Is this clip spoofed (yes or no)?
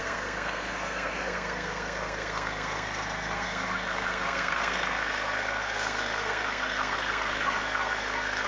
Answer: yes